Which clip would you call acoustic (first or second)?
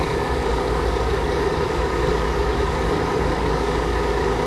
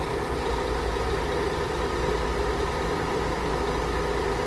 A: second